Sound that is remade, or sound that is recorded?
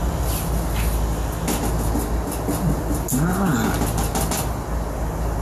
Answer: recorded